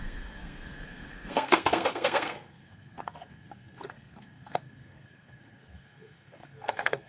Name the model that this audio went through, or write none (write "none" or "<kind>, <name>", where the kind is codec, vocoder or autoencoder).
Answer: codec, SNAC